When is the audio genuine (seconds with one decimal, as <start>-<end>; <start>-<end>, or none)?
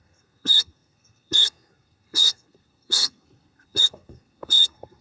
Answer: none